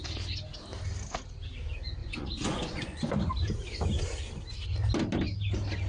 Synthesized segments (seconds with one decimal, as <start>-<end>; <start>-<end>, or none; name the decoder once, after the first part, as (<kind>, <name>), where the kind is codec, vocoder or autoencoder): 2.0-3.1 (vocoder, Vocos)